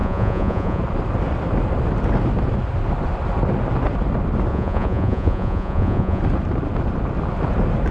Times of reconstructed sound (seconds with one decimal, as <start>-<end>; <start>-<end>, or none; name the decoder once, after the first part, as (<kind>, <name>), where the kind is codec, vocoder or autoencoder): 0.0-0.8 (vocoder, Vocos); 4.5-6.2